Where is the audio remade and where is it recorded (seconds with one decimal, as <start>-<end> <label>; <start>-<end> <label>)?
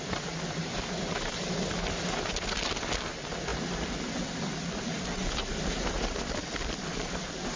0.0-3.5 recorded; 3.5-5.5 remade; 5.5-6.4 recorded; 6.4-7.6 remade